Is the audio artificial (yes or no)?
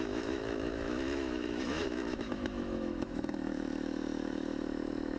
yes